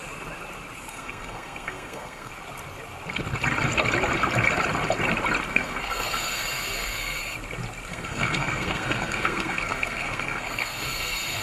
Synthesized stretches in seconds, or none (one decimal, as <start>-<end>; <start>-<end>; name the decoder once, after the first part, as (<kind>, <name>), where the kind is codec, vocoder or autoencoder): 0.9-2.3 (codec, SNAC); 5.5-7.2; 7.9-11.4